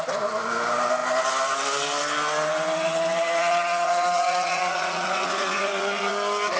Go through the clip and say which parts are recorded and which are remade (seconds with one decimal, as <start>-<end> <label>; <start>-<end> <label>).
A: 0.0-3.4 recorded; 3.4-6.1 remade; 6.1-6.6 recorded